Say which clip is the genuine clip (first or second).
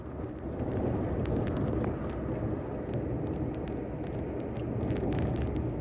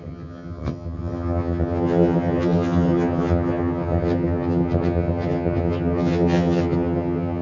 first